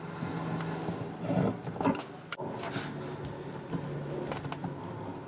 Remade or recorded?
recorded